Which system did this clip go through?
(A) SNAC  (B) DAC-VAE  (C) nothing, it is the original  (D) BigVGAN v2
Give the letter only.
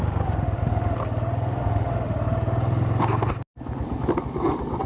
C